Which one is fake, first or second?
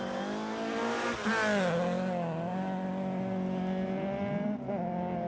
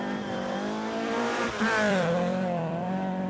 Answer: second